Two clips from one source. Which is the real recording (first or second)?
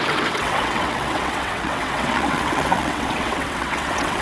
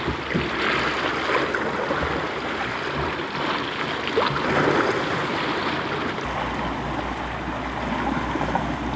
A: second